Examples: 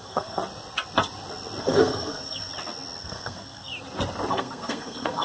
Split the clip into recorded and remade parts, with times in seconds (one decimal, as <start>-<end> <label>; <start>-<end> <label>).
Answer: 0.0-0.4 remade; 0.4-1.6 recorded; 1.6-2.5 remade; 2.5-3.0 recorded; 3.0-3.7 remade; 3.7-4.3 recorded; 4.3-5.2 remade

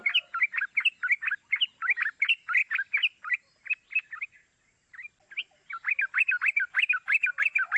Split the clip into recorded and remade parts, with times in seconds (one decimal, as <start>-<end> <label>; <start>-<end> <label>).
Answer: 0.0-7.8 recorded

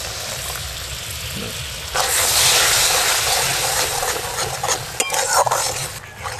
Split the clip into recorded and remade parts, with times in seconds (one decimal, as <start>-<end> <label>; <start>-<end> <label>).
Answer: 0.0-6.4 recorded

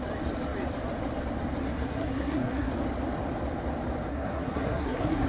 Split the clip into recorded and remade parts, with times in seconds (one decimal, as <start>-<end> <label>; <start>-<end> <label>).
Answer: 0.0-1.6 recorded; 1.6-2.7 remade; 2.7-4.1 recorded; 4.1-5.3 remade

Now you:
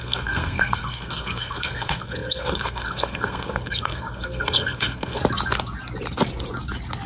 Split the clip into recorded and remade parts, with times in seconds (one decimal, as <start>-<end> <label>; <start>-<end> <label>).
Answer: 0.0-5.2 remade; 5.2-7.1 recorded

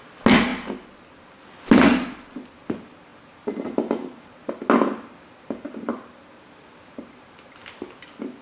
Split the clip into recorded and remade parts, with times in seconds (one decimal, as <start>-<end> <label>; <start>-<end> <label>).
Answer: 0.0-8.4 recorded